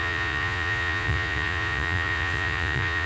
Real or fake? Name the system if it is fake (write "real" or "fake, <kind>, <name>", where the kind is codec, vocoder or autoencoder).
fake, vocoder, Vocos